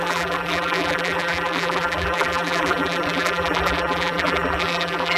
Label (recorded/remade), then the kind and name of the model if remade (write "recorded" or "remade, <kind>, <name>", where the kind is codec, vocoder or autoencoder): remade, vocoder, BigVGAN v2